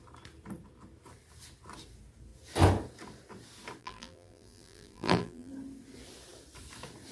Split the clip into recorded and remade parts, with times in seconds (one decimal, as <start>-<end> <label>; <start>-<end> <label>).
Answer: 0.0-3.8 recorded; 3.8-5.5 remade; 5.5-7.1 recorded

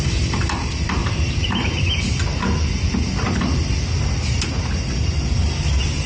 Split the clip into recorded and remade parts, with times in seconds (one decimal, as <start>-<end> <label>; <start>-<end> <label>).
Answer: 0.0-1.0 recorded; 1.0-2.0 remade; 2.0-6.1 recorded

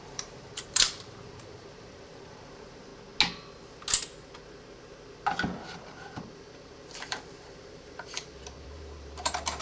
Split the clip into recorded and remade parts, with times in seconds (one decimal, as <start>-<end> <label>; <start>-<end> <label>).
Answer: 0.0-2.9 remade; 2.9-6.9 recorded; 6.9-9.6 remade

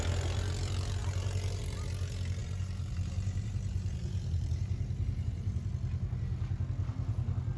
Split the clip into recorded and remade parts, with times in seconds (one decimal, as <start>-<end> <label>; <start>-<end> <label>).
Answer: 0.0-1.0 recorded; 1.0-1.6 remade; 1.6-2.4 recorded; 2.4-5.7 remade; 5.7-7.6 recorded

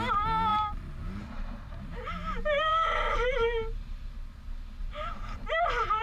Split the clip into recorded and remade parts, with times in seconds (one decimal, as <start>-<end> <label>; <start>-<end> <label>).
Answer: 0.0-0.5 recorded; 0.5-4.1 remade; 4.1-4.8 recorded; 4.8-6.0 remade

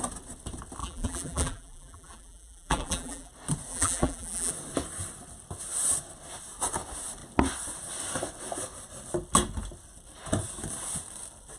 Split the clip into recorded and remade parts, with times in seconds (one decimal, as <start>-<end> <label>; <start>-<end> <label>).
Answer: 0.0-0.8 recorded; 0.8-3.3 remade; 3.3-3.7 recorded; 3.7-4.5 remade; 4.5-11.6 recorded

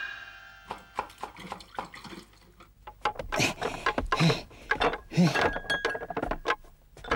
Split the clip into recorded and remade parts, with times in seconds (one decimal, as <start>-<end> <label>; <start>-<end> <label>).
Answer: 0.0-7.2 recorded